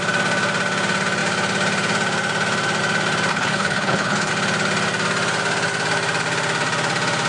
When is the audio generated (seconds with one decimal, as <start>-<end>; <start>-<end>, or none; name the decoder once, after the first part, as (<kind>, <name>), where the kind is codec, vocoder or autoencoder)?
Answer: 3.3-4.3 (codec, HILCodec)

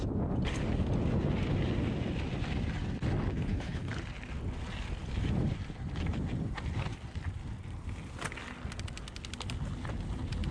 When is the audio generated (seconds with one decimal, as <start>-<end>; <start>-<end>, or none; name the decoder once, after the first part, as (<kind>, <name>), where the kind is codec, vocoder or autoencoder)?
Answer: 3.3-3.9 (codec, HILCodec)

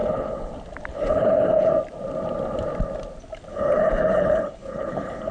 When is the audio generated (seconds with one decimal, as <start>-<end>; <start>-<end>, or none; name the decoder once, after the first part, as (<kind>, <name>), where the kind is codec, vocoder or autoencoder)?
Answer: 0.0-0.5 (codec, HILCodec); 0.9-1.7; 3.5-5.3

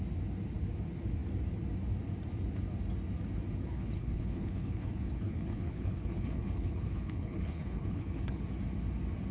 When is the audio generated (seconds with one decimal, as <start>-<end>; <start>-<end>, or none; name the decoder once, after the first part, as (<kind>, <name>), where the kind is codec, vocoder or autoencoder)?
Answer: 3.7-8.4 (codec, HILCodec)

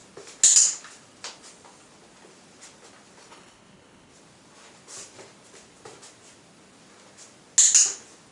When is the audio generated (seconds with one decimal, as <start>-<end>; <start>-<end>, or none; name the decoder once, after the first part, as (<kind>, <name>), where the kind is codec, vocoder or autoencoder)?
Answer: 3.3-4.1 (codec, HILCodec)